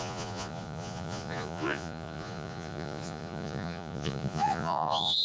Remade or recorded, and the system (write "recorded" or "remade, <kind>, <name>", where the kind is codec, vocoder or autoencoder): remade, vocoder, Vocos